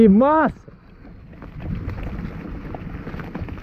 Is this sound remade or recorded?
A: recorded